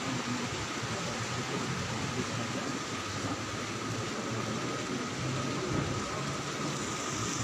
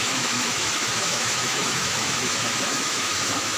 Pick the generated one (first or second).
second